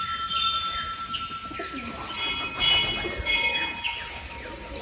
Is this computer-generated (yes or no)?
no